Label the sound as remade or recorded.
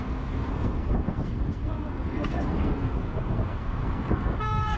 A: remade